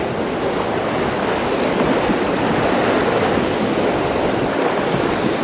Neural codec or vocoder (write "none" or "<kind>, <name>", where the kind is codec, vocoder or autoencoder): none